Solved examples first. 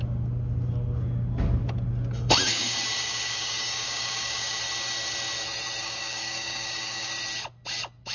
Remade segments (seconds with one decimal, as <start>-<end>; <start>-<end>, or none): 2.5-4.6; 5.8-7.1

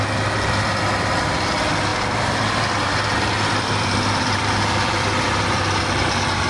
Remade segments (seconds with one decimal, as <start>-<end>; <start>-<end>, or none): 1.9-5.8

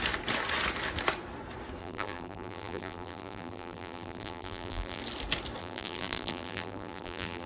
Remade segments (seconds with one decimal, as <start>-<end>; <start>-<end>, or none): 1.8-5.0; 5.6-7.5

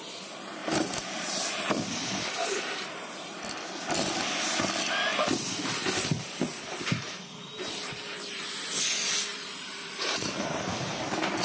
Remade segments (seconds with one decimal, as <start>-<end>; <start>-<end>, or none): 0.6-3.4; 5.1-8.5; 9.3-10.7